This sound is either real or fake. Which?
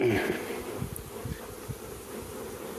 real